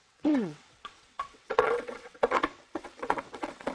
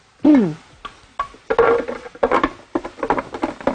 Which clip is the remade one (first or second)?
first